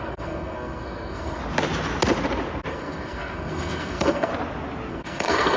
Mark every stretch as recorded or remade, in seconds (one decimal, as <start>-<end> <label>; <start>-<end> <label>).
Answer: 0.0-1.4 remade; 1.4-2.7 recorded; 2.7-4.3 remade; 4.3-4.9 recorded; 4.9-5.6 remade